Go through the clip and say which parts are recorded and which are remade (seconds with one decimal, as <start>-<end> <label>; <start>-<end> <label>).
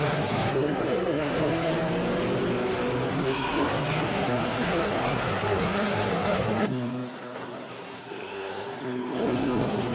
0.0-1.7 remade; 1.7-3.1 recorded; 3.1-9.9 remade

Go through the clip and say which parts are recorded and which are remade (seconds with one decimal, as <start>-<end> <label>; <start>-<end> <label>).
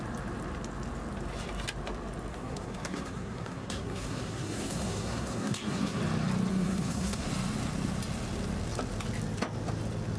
0.0-2.3 recorded; 2.3-6.0 remade; 6.0-6.5 recorded; 6.5-7.3 remade; 7.3-10.2 recorded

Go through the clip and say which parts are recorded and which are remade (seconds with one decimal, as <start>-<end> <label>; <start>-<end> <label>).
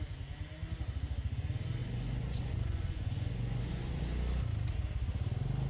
0.0-1.8 recorded; 1.8-4.0 remade; 4.0-5.7 recorded